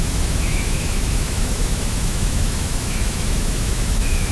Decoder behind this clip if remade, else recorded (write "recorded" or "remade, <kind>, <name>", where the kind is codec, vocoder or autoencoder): remade, autoencoder, DAC-VAE